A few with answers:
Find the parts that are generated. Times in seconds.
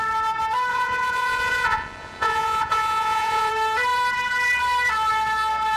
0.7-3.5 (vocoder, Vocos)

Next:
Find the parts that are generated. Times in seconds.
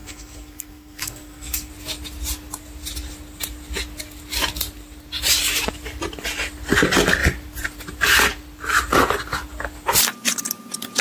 0.0-1.7 (codec, SNAC)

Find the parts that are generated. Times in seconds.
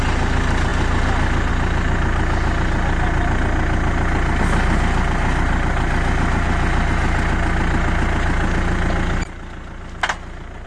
none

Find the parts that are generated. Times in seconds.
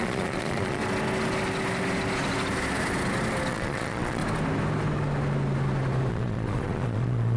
0.0-0.8 (vocoder, Vocos); 3.5-4.2; 6.1-7.4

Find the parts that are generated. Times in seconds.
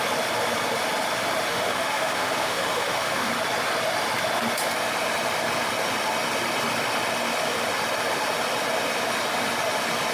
1.5-3.3 (autoencoder, DAC-VAE)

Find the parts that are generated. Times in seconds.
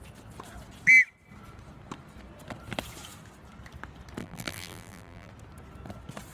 4.2-5.3 (vocoder, BigVGAN v2)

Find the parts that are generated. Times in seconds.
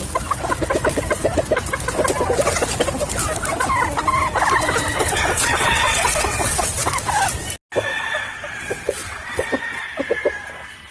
4.9-6.9 (vocoder, WaveNeXt); 7.9-9.5